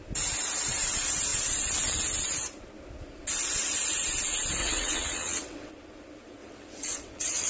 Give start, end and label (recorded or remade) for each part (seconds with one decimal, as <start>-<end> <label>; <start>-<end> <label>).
0.0-4.6 recorded; 4.6-5.7 remade; 5.7-6.4 recorded; 6.4-7.5 remade